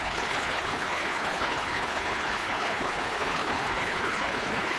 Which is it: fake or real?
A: fake